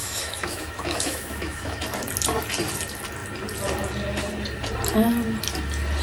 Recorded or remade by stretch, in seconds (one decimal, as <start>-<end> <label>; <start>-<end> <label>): 0.0-1.8 remade; 1.8-6.0 recorded